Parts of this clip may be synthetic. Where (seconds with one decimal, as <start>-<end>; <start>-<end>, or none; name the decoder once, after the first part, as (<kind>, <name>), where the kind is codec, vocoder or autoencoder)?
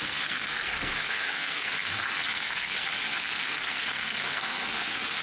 0.0-5.2 (codec, SNAC)